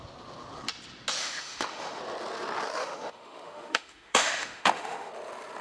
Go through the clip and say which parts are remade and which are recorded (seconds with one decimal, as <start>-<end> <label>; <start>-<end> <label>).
0.0-1.2 recorded; 1.2-2.0 remade; 2.0-2.8 recorded; 2.8-5.1 remade; 5.1-5.6 recorded